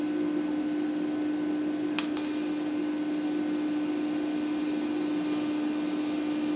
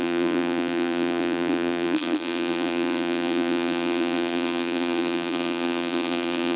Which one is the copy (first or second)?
second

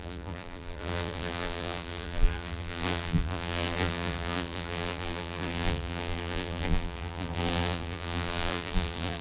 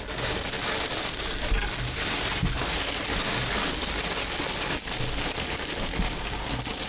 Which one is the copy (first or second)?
first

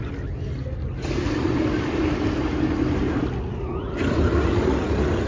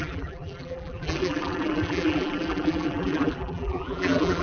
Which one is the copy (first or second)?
second